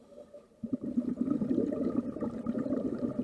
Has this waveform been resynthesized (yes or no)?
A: yes